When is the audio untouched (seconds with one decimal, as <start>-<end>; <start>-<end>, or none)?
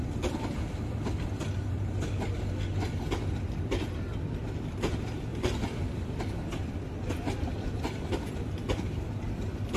0.0-5.3; 6.2-9.8